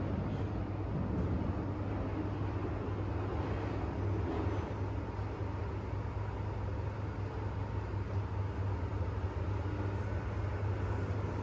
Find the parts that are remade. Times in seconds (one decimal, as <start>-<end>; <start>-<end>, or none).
none